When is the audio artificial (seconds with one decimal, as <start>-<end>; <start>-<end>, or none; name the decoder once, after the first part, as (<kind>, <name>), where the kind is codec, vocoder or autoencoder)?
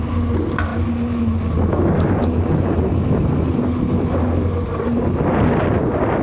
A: none